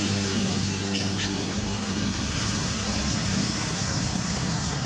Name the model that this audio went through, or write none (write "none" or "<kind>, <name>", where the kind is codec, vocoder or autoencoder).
codec, SNAC